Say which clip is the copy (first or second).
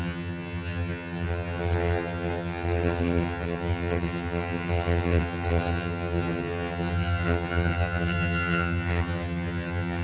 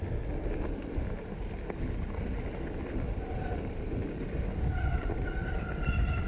first